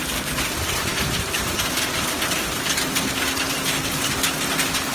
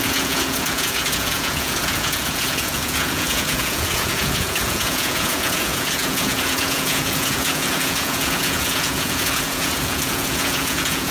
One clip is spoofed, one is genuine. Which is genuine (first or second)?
first